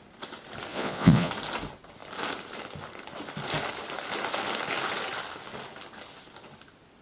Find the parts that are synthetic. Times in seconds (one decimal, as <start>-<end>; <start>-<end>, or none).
0.7-1.3